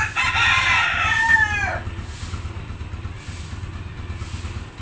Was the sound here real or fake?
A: real